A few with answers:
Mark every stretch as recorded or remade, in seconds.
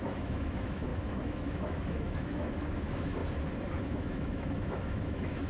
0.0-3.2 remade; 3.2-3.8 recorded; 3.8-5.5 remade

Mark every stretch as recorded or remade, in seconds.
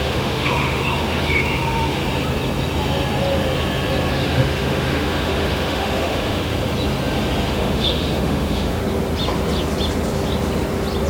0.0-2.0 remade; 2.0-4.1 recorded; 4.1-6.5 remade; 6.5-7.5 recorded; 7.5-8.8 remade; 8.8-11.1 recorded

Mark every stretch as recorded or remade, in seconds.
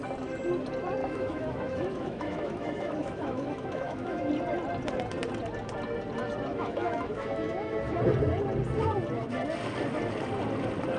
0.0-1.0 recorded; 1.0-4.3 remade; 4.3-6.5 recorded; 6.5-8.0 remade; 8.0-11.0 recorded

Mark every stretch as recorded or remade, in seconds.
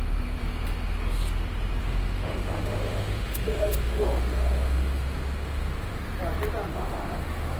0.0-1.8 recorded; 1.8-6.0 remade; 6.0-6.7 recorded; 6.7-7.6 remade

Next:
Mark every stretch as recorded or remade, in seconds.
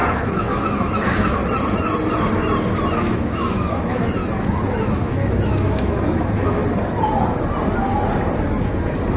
0.0-1.4 remade; 1.4-2.9 recorded; 2.9-4.2 remade; 4.2-4.8 recorded; 4.8-6.6 remade; 6.6-9.2 recorded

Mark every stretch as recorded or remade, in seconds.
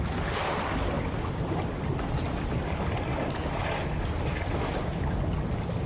0.0-5.9 recorded